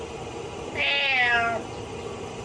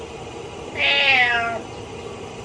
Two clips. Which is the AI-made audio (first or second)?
second